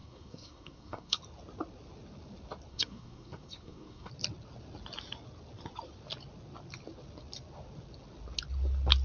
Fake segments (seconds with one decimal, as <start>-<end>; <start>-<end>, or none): 0.0-1.2; 2.7-4.1